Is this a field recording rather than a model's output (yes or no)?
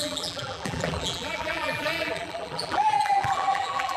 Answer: no